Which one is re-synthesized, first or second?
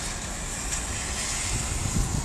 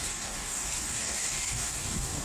second